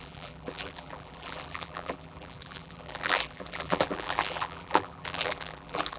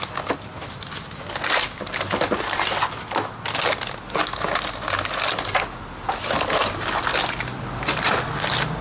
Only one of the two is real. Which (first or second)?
second